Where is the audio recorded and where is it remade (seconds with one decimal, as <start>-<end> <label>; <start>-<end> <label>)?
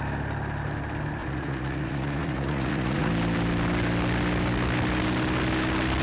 0.0-1.2 recorded; 1.2-3.1 remade; 3.1-6.0 recorded